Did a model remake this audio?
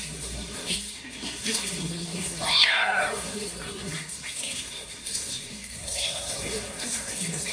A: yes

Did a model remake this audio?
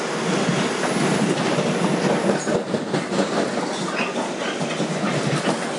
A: no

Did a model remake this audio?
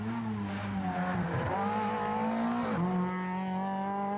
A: no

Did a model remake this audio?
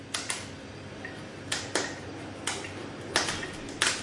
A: no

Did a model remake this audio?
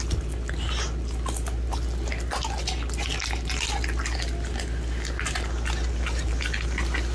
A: no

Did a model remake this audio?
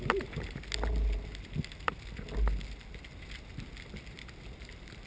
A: no